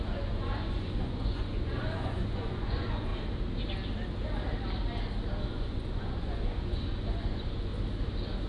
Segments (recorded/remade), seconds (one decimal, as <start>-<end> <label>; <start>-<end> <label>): 0.0-3.1 remade; 3.1-5.4 recorded; 5.4-7.7 remade; 7.7-8.5 recorded